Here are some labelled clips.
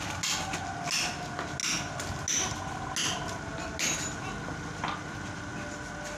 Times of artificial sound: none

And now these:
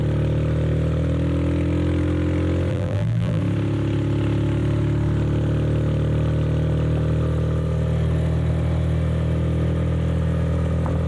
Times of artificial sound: 2.7-3.4 (vocoder, BigVGAN v2)

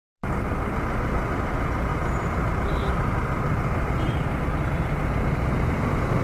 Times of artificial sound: 1.9-4.4 (vocoder, BigVGAN v2)

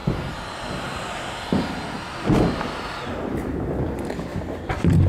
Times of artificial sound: none

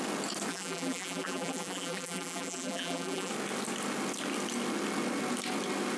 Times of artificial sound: 0.5-3.3 (vocoder, BigVGAN v2)

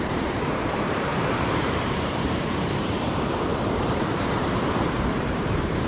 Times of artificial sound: 0.0-5.9 (vocoder, BigVGAN v2)

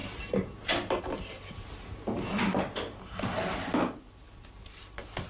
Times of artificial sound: 0.0-2.5 (vocoder, BigVGAN v2)